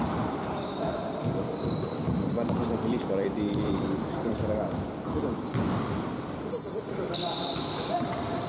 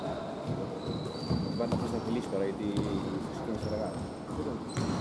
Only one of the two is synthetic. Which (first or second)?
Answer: first